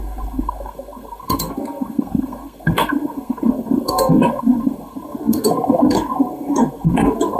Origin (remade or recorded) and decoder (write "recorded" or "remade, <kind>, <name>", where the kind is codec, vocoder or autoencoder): remade, codec, SNAC